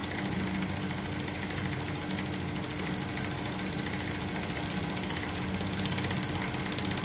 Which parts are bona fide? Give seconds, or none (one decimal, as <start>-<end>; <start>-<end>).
0.0-7.0